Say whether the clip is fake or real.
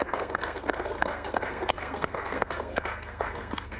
fake